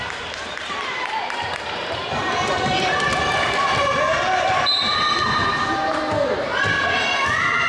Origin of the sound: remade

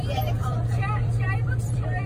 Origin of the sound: remade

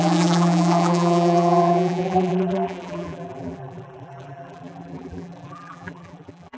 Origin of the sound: remade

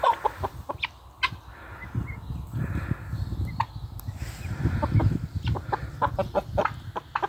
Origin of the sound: recorded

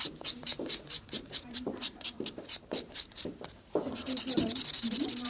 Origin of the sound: remade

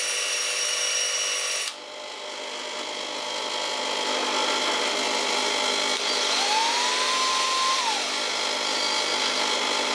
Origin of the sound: recorded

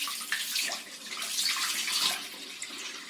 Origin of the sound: remade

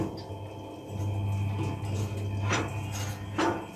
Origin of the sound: recorded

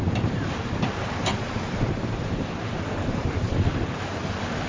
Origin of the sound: remade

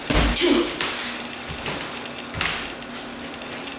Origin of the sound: recorded